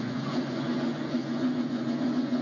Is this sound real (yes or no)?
no